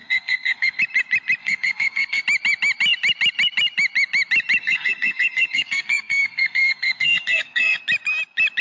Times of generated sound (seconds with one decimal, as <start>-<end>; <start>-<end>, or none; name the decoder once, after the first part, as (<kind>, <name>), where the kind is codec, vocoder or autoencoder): 0.0-0.8 (codec, SNAC); 1.4-2.2; 4.6-7.8